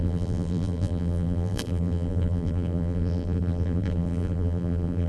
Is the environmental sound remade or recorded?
remade